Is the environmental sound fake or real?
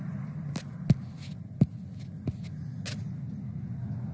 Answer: real